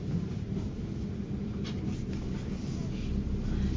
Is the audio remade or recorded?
recorded